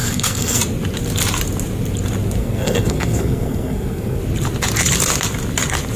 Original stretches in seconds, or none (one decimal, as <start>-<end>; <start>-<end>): 0.6-2.4; 4.2-6.0